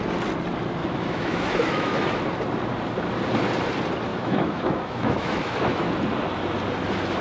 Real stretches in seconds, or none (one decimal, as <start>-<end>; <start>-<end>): 0.0-0.8; 2.2-4.1; 5.9-7.2